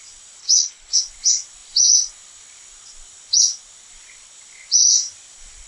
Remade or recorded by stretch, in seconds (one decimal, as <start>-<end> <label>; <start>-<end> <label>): 0.0-0.4 recorded; 0.4-1.0 remade; 1.0-5.7 recorded